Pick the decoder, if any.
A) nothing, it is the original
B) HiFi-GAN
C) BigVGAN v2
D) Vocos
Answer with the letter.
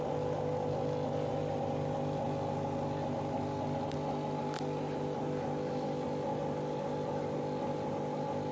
A